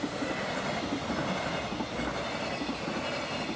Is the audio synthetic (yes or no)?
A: no